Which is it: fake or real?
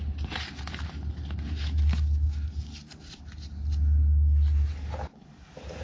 real